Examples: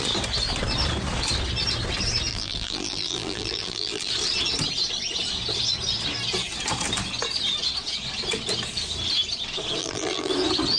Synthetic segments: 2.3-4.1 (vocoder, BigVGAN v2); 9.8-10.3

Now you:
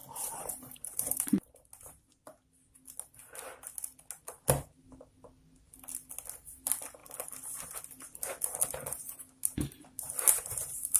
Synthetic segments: 0.0-1.5 (vocoder, BigVGAN v2)

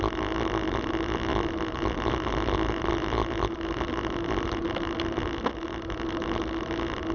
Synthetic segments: none

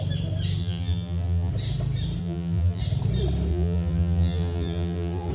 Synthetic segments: 0.6-1.5 (vocoder, BigVGAN v2); 2.2-2.8; 3.5-5.3

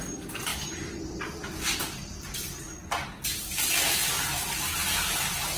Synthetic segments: none